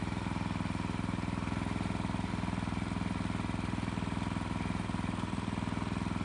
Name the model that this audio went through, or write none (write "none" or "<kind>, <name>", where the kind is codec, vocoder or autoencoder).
none